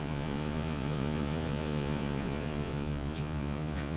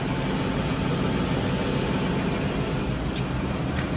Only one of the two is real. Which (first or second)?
second